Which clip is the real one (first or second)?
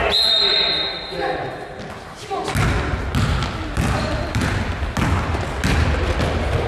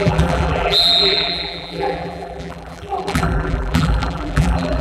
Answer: first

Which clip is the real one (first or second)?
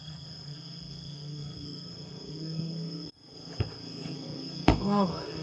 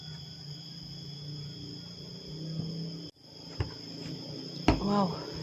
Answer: second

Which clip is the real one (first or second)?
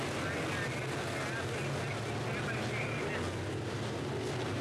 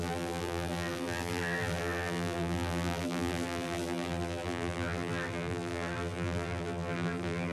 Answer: first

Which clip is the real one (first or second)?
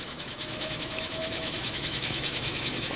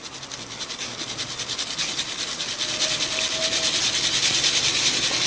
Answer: second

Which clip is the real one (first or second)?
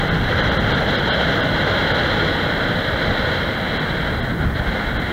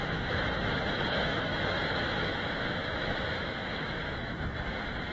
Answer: first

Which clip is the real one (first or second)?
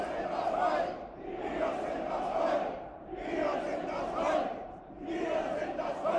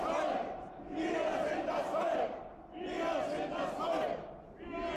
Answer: second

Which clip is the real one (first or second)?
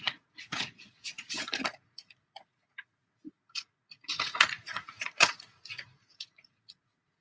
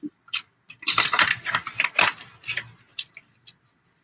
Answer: second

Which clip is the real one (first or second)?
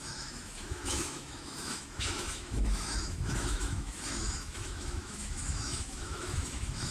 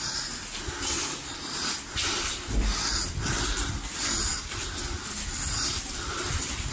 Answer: second